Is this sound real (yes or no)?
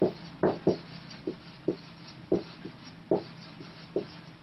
yes